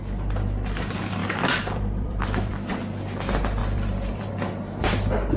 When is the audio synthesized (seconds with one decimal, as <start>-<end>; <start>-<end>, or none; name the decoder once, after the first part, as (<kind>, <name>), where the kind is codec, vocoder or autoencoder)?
1.2-2.5 (vocoder, BigVGAN v2); 3.6-4.3